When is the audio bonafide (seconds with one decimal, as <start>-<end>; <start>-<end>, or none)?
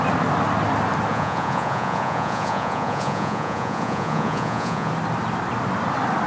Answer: 0.0-1.1; 4.9-6.3